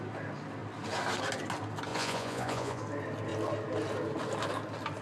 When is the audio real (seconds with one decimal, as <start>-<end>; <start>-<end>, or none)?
0.0-1.9; 2.8-5.0